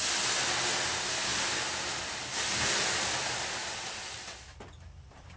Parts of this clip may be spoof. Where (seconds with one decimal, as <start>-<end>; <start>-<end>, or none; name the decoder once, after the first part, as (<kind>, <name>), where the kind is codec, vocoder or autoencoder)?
none